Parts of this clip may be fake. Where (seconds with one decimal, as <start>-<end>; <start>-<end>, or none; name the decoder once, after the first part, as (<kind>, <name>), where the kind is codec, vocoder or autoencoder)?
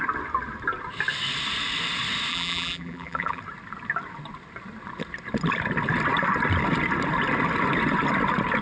2.3-3.4 (vocoder, BigVGAN v2)